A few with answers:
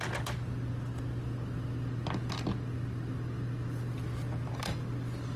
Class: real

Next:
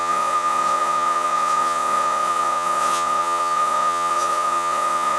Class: fake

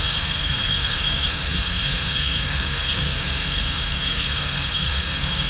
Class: fake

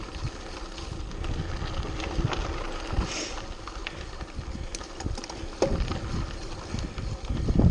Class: real